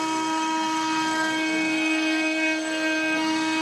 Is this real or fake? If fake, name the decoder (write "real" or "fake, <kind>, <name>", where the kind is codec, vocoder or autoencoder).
fake, codec, SNAC